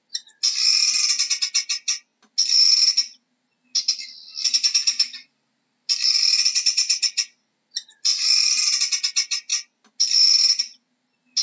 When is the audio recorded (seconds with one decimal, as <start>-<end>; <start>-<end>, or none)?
0.0-8.1; 8.8-11.4